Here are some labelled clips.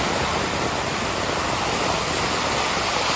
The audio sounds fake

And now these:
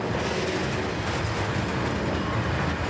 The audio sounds real